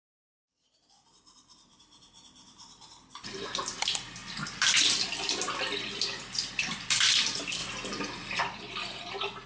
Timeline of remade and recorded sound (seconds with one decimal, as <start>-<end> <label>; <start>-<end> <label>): 0.0-4.2 remade; 4.2-4.7 recorded; 4.7-7.6 remade; 7.6-8.4 recorded; 8.4-9.5 remade